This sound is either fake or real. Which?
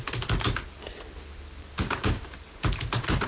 real